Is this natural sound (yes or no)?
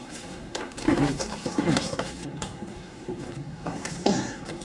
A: no